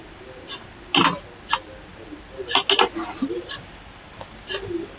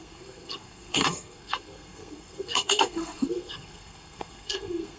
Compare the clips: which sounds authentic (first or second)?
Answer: first